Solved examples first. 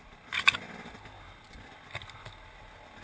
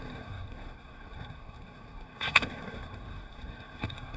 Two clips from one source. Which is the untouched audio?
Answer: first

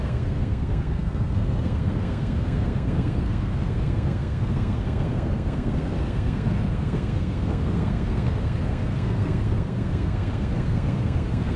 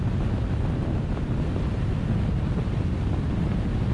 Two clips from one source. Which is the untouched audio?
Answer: second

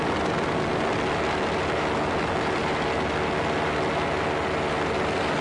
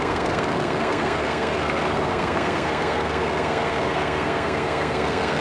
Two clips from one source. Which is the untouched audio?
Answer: first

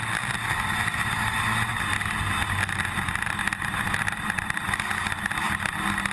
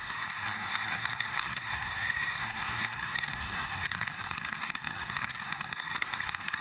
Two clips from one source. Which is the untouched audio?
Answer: first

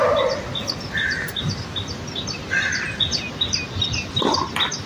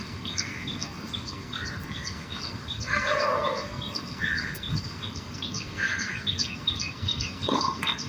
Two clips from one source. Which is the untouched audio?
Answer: first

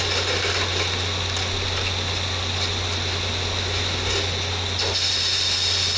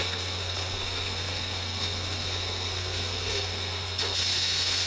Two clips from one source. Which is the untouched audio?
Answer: first